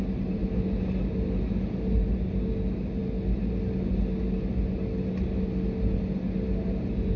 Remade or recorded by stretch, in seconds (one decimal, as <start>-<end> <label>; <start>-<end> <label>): 0.0-7.2 recorded